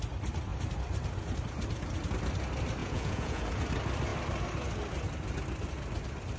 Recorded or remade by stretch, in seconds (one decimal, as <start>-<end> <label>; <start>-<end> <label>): 0.0-2.8 recorded; 2.8-3.4 remade; 3.4-6.4 recorded